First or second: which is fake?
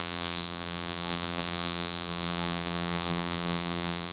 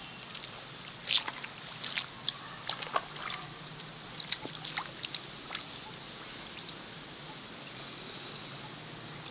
first